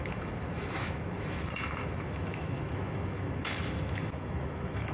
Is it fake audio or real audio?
fake